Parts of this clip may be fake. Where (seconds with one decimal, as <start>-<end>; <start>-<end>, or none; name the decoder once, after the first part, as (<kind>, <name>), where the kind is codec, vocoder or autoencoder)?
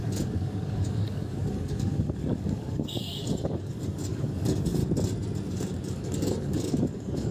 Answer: 0.0-4.8 (codec, DAC); 5.9-7.3